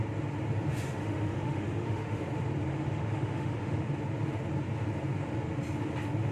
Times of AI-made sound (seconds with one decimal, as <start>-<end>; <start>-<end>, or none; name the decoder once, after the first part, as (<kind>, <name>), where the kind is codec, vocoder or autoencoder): 0.7-2.2 (autoencoder, DAC-VAE); 2.7-3.9